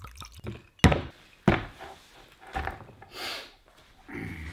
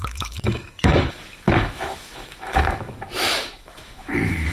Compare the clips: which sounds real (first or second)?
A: first